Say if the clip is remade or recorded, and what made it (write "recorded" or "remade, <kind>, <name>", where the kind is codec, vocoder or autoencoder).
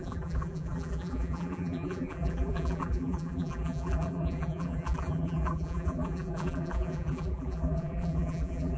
remade, vocoder, BigVGAN v2